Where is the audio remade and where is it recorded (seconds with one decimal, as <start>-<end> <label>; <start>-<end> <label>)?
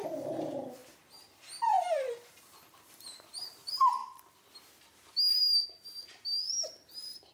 0.0-4.0 remade; 4.0-6.6 recorded; 6.6-7.3 remade